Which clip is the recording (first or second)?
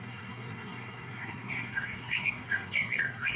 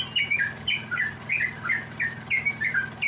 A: second